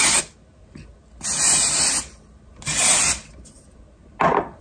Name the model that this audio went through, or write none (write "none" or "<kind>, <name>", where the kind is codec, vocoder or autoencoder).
none